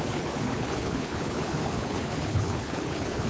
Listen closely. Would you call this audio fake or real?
fake